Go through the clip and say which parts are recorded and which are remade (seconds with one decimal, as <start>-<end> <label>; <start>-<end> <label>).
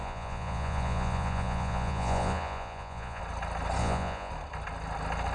0.0-3.2 remade; 3.2-3.8 recorded; 3.8-4.3 remade; 4.3-5.3 recorded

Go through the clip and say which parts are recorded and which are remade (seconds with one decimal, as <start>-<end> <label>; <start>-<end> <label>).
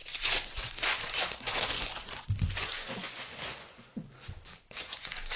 0.0-5.4 remade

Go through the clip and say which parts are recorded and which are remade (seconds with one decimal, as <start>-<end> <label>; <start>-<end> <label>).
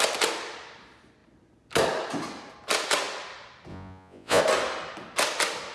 0.0-3.7 recorded; 3.7-4.4 remade; 4.4-5.7 recorded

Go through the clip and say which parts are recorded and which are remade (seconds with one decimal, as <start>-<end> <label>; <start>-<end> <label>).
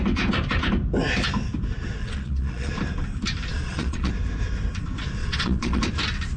0.0-2.0 recorded; 2.0-2.7 remade; 2.7-3.5 recorded; 3.5-4.1 remade; 4.1-5.2 recorded; 5.2-5.8 remade; 5.8-6.4 recorded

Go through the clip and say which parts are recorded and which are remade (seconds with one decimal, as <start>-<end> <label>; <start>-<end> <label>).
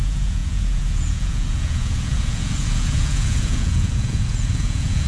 0.0-5.1 remade